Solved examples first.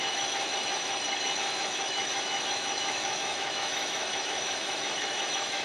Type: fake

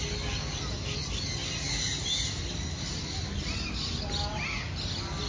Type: real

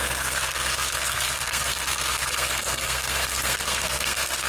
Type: fake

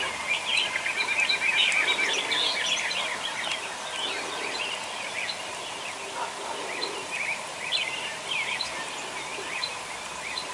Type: real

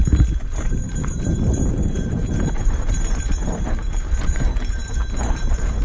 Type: fake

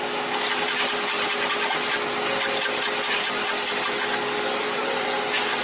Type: real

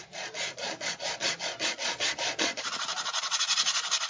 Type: fake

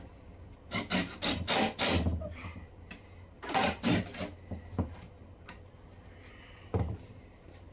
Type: real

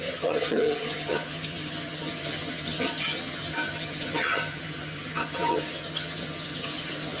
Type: fake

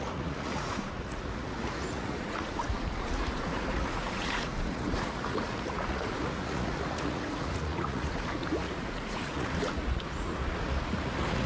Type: fake